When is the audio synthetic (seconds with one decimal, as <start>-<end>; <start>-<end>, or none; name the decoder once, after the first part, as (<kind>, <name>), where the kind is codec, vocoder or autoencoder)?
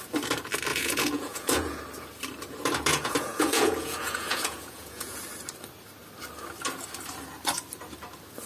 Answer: 0.7-1.8 (vocoder, Vocos); 2.9-5.2